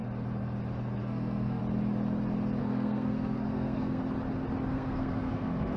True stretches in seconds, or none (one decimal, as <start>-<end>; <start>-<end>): 0.0-1.0; 1.6-2.6; 4.0-4.7